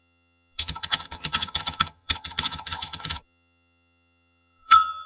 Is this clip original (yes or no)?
no